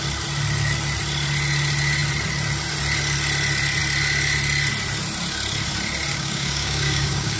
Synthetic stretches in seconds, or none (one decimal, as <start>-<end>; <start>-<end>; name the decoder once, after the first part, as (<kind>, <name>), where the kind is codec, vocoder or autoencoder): 6.1-7.4 (codec, DAC)